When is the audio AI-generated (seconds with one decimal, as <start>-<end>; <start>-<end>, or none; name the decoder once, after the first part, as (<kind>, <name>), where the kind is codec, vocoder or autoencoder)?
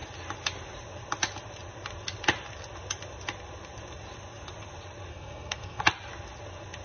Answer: 5.1-5.8 (codec, SNAC)